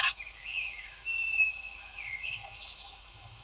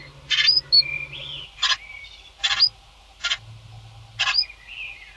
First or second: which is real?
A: second